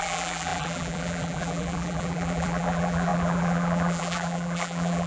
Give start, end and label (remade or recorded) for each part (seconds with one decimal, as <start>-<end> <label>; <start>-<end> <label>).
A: 0.0-5.1 remade